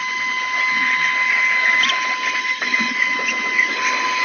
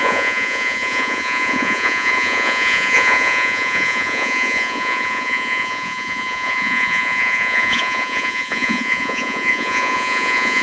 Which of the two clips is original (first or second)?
first